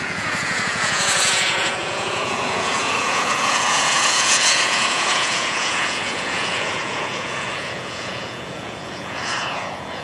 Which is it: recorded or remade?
remade